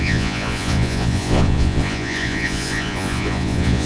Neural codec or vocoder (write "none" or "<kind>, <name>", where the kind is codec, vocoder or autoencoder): vocoder, Vocos